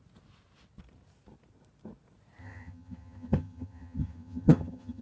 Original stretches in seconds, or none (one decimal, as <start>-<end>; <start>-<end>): 0.0-2.4

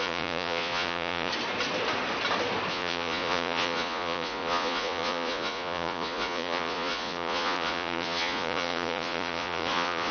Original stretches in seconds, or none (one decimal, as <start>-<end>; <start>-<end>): 1.3-2.7

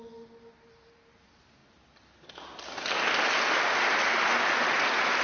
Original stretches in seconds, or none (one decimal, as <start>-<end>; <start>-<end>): 0.0-5.2

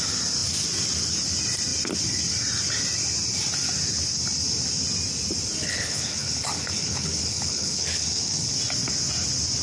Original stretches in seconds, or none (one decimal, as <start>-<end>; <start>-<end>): 0.0-5.6; 8.5-9.6